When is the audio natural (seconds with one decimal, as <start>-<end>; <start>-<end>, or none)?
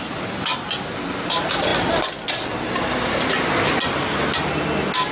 0.0-5.1